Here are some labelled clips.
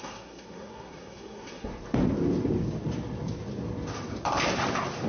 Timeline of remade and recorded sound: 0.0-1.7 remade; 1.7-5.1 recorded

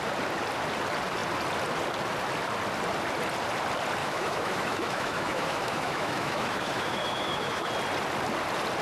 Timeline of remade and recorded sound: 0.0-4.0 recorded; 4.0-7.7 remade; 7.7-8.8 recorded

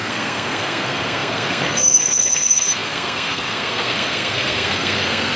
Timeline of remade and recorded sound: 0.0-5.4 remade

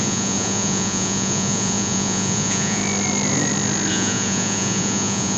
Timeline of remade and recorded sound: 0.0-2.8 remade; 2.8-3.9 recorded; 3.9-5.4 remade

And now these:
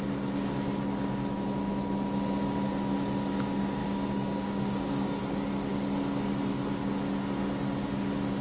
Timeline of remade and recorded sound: 0.0-3.8 recorded; 3.8-5.2 remade; 5.2-8.4 recorded

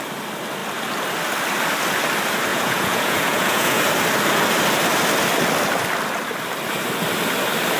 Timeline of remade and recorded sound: 0.0-2.5 recorded; 2.5-3.8 remade; 3.8-7.8 recorded